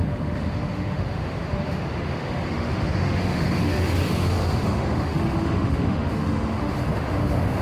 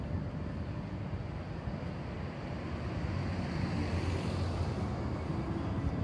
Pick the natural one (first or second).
second